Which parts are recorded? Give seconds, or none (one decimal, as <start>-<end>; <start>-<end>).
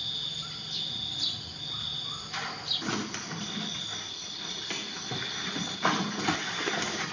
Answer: 0.0-7.1